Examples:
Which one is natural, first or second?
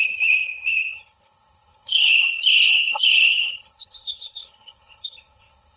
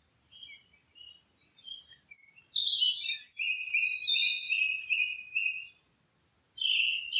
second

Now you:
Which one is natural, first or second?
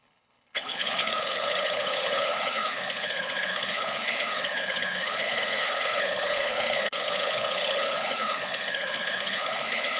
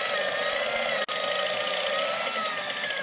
second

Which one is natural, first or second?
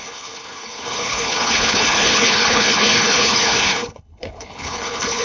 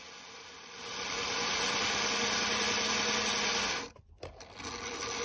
second